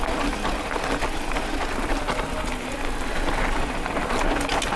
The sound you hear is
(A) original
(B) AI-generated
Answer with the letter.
A